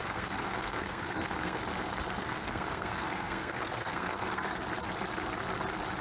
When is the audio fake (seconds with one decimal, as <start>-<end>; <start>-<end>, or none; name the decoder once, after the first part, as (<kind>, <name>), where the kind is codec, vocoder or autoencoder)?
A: 0.0-1.6 (codec, SNAC); 2.2-4.6